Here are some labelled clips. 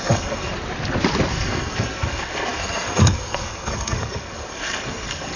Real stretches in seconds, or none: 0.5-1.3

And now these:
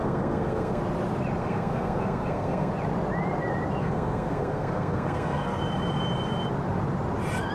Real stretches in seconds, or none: 0.8-1.4; 2.7-3.8; 5.6-7.5

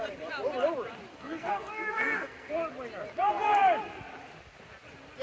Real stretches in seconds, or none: 0.0-1.1; 2.5-5.2

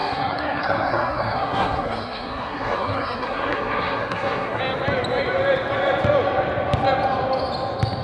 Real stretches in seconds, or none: 4.6-8.0